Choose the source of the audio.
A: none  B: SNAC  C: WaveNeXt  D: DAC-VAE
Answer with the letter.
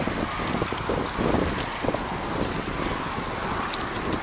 A